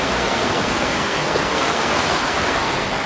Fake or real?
fake